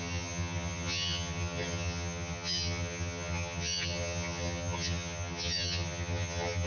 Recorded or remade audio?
remade